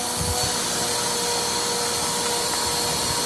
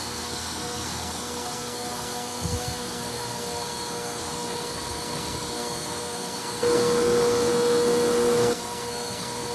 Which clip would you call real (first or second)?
first